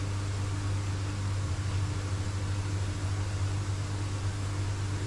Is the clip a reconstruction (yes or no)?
no